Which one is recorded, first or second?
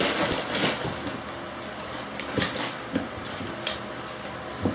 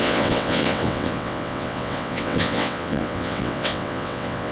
first